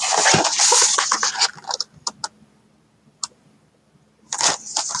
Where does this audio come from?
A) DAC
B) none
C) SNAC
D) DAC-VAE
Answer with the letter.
B